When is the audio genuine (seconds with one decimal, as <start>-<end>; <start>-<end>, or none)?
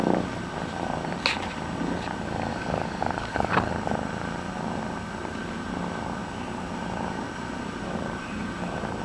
0.0-2.5; 3.7-9.0